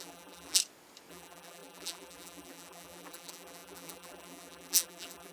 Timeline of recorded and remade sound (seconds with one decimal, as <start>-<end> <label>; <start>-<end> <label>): 0.0-0.6 remade; 0.6-1.1 recorded; 1.1-5.3 remade